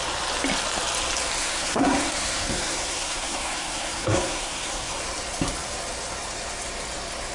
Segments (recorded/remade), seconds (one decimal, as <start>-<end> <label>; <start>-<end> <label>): 0.0-1.4 recorded; 1.4-4.9 remade; 4.9-7.3 recorded